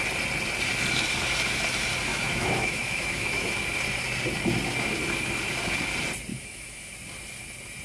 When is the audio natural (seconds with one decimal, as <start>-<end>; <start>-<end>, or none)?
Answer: 0.0-2.1; 3.6-6.3; 6.9-7.8